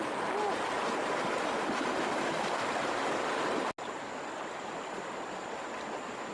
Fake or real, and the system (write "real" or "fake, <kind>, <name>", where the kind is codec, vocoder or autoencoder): real